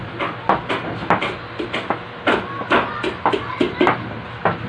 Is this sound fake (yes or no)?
no